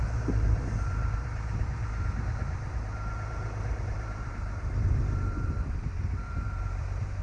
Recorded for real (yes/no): no